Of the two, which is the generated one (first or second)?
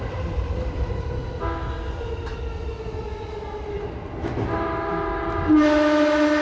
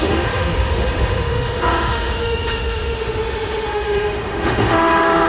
second